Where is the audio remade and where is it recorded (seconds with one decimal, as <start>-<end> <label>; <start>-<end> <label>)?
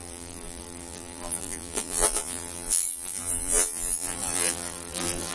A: 0.0-5.3 remade